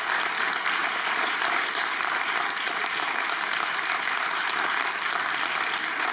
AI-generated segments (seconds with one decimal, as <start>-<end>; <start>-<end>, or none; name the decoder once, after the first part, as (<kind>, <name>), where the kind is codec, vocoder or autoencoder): 0.8-4.5 (vocoder, BigVGAN v2)